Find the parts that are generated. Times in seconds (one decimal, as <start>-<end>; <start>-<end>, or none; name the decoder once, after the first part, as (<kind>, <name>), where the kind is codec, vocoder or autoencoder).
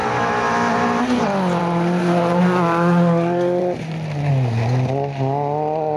1.6-2.4 (vocoder, BigVGAN v2); 3.6-4.3